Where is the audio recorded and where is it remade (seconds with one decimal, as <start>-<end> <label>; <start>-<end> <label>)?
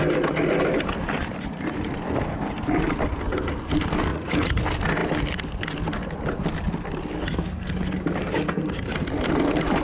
0.0-4.1 recorded; 4.1-4.6 remade; 4.6-9.8 recorded